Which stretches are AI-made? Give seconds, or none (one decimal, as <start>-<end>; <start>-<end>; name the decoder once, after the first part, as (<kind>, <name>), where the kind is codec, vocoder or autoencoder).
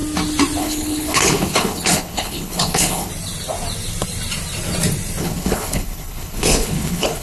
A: 0.6-3.1 (codec, HILCodec); 5.2-7.2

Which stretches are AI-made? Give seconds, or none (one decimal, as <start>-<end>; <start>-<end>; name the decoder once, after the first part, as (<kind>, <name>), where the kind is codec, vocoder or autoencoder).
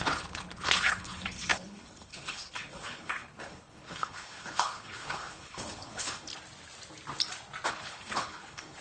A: 0.0-6.3 (codec, HILCodec); 7.7-8.8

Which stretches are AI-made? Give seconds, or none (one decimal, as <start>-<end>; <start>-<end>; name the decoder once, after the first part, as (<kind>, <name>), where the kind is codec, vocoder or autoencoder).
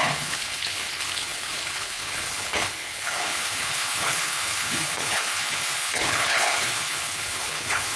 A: 0.0-8.0 (codec, HILCodec)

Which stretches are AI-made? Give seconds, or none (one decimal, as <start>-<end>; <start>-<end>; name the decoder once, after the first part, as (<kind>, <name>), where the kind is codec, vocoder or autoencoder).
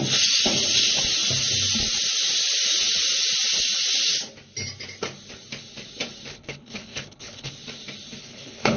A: 6.3-7.5 (codec, HILCodec); 8.2-8.8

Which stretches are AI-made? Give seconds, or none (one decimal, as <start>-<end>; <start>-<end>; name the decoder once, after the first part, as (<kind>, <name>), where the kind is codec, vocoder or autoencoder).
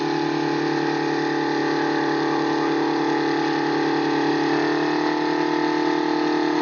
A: none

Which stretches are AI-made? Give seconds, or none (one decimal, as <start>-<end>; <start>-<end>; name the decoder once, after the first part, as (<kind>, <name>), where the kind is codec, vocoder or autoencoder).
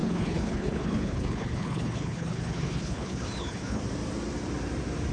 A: 0.0-3.8 (codec, HILCodec)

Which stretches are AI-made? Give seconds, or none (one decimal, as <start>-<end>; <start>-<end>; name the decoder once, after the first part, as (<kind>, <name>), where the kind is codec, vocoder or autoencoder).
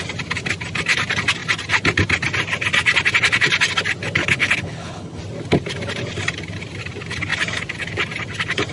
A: 4.2-5.2 (codec, HILCodec)